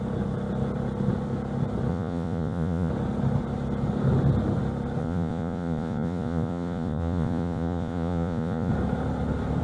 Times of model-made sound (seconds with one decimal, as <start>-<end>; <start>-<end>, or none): 1.9-2.9; 5.0-8.7